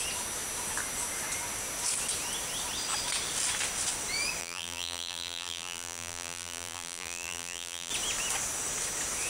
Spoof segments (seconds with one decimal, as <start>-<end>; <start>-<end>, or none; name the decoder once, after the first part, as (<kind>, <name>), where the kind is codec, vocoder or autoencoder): 4.4-7.9 (vocoder, BigVGAN v2)

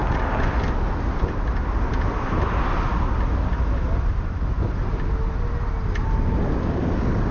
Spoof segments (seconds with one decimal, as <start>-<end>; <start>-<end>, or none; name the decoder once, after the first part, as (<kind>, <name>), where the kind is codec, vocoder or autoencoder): 3.5-5.1 (vocoder, BigVGAN v2)

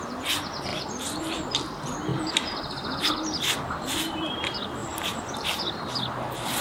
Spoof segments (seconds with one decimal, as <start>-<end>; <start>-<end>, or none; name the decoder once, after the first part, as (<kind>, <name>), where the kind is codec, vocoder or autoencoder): 4.8-5.8 (vocoder, BigVGAN v2)